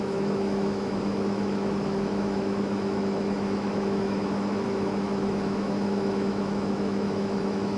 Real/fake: fake